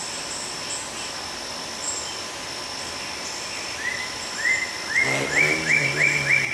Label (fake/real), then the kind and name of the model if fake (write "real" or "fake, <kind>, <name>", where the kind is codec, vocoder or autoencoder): real